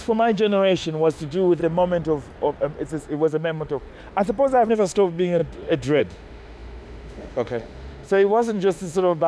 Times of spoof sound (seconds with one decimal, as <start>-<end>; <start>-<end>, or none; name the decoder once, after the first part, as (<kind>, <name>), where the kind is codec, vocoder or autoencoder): 0.0-1.6 (autoencoder, DAC-VAE); 3.0-3.9; 4.7-9.3